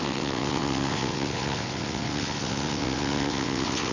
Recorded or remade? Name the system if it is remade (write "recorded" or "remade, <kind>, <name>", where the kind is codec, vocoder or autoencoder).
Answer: remade, vocoder, WaveNeXt